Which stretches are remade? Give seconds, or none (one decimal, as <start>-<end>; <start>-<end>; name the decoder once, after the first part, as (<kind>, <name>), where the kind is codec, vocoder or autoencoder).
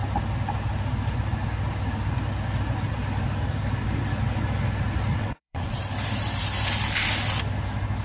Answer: 5.1-5.8 (vocoder, WaveNeXt)